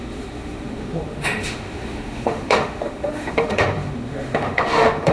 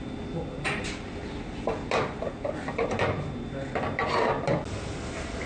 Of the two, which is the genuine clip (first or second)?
second